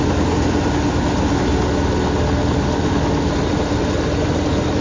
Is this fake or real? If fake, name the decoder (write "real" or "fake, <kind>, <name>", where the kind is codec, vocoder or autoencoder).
real